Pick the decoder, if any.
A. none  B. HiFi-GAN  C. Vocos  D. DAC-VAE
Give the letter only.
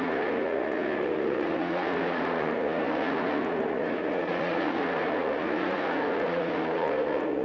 C